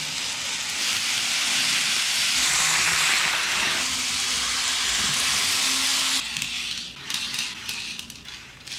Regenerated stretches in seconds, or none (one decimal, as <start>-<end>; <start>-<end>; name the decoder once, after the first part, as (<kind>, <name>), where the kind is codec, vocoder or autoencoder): none